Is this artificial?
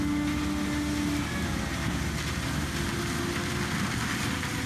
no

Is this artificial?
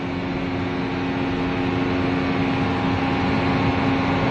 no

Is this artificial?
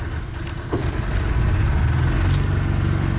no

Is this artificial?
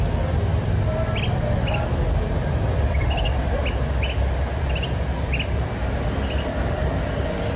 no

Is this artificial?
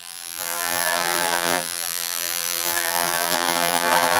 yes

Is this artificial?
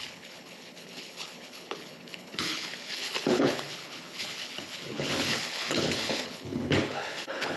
yes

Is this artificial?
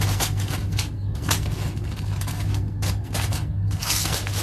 yes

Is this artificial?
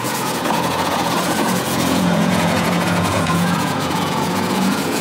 yes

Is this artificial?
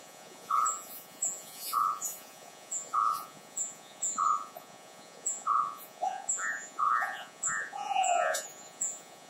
yes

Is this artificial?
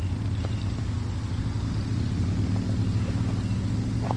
no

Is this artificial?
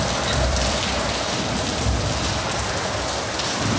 yes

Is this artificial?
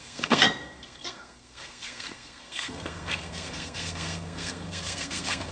yes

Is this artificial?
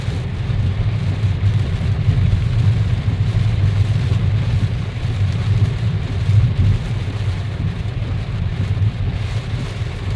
yes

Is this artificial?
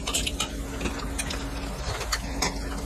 no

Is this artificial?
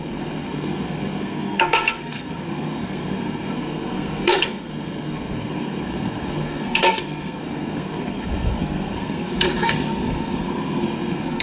yes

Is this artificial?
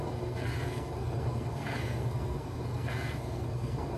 yes